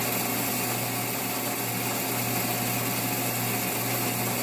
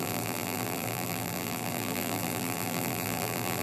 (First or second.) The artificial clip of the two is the second